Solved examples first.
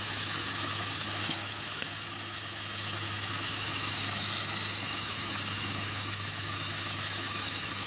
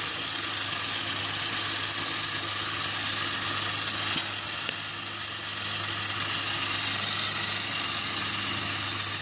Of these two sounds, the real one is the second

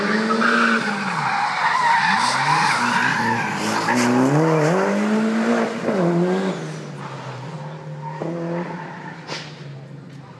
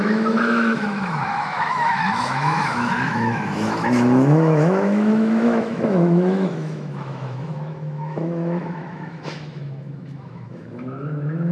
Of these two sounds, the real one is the first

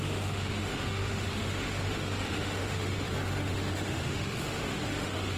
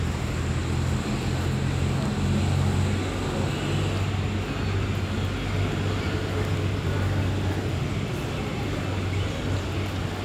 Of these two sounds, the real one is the second